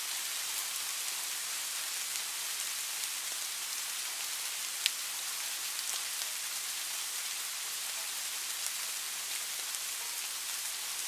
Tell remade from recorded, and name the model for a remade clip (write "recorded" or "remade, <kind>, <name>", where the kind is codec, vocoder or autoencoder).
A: recorded